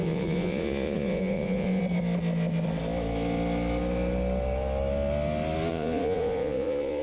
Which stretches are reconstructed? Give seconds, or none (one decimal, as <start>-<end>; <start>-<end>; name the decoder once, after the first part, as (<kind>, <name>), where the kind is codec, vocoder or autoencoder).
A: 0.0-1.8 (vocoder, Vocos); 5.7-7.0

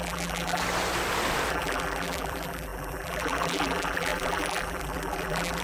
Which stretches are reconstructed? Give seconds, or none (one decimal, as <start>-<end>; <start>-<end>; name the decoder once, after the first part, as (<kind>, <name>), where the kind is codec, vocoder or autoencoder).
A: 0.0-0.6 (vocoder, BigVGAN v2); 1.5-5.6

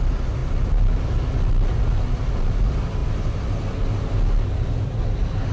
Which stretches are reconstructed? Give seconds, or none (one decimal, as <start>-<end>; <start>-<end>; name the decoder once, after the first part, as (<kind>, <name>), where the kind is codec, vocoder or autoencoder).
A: 0.4-1.0 (vocoder, BigVGAN v2)

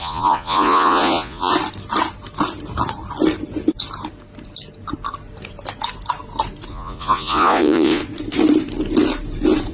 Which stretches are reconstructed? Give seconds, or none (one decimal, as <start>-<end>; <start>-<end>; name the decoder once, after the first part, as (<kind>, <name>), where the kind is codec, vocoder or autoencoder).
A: 0.0-1.5 (vocoder, Vocos); 6.7-8.0

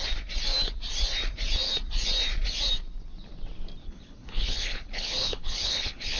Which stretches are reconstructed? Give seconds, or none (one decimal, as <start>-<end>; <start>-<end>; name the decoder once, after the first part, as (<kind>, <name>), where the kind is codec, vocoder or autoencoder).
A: 3.8-6.2 (codec, HILCodec)

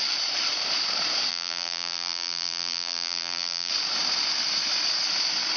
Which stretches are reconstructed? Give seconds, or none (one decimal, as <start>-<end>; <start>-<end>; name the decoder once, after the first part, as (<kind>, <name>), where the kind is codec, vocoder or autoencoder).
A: 1.3-3.7 (vocoder, BigVGAN v2)